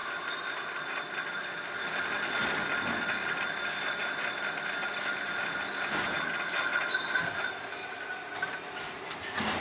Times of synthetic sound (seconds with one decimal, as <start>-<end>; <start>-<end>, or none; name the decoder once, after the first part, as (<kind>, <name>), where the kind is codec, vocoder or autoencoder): none